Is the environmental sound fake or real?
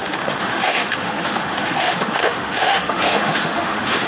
fake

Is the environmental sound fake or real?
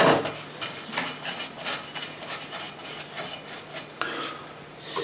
real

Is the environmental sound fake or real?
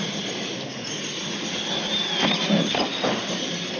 real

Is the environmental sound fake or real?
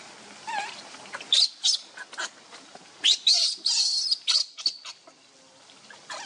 real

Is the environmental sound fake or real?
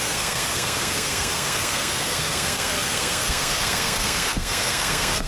fake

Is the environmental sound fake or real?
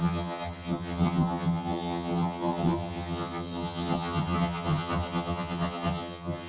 fake